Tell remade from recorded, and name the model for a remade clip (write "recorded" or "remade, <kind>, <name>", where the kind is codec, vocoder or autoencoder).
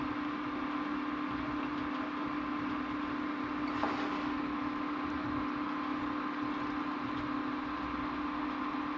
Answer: recorded